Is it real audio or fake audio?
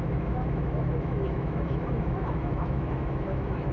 fake